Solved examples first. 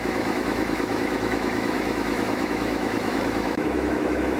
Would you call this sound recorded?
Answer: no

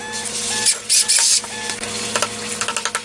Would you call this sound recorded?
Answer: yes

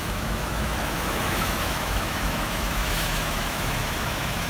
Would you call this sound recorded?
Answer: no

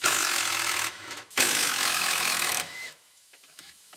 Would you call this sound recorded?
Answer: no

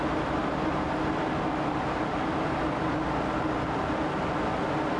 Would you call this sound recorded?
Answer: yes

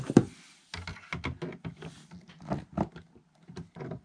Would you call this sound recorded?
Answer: yes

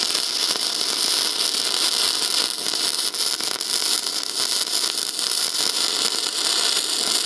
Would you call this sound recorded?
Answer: yes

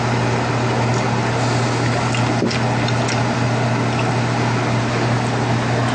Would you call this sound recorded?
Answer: yes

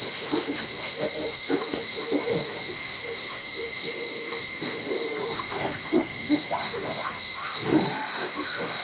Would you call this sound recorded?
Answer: no